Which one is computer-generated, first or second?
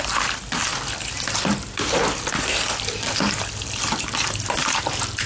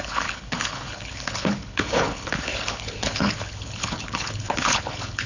second